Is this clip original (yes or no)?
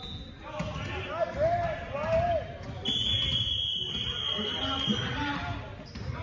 yes